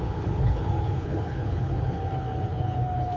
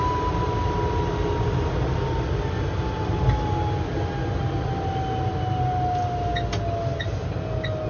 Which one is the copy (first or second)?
first